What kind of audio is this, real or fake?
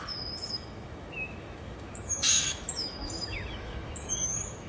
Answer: fake